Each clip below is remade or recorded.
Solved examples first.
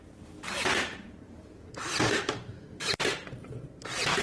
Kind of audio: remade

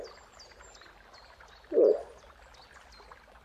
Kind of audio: recorded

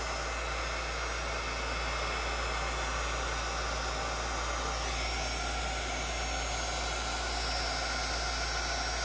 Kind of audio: recorded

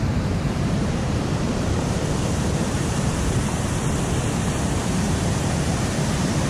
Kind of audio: remade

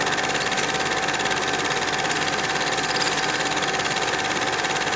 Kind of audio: recorded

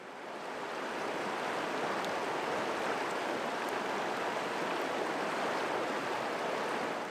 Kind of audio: recorded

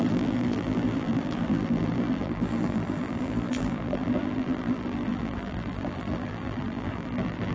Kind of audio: remade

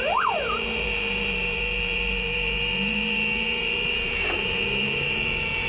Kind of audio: remade